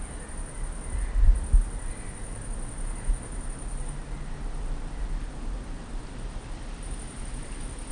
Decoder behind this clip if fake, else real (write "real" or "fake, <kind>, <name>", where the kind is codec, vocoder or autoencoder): real